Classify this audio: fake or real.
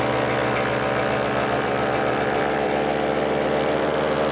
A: real